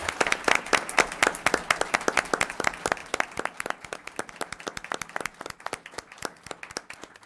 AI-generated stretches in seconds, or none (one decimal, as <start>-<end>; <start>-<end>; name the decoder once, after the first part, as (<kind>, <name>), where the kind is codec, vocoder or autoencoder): none